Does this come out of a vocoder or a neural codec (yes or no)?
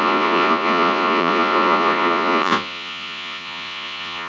yes